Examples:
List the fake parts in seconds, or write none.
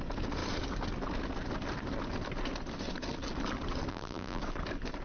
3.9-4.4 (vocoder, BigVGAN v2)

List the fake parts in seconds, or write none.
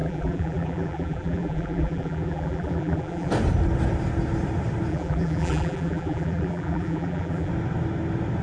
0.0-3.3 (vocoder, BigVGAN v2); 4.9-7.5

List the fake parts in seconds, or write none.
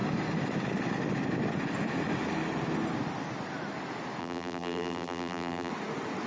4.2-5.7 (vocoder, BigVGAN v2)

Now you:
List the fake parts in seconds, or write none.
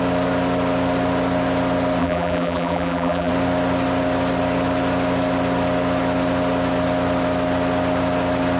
2.0-3.3 (vocoder, BigVGAN v2)